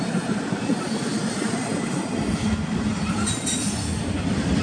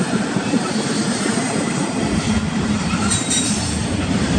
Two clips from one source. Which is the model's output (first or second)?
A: second